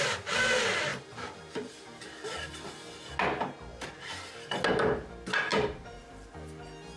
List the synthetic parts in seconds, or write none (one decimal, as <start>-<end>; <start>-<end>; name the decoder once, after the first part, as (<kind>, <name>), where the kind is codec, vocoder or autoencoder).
0.9-2.5 (vocoder, BigVGAN v2); 3.7-4.3; 5.5-6.3